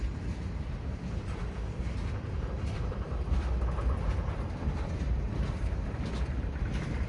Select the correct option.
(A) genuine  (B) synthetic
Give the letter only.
B